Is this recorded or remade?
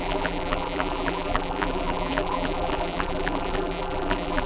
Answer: remade